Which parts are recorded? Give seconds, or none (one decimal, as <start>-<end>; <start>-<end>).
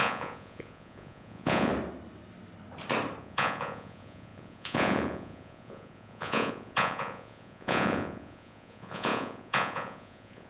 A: 1.7-3.2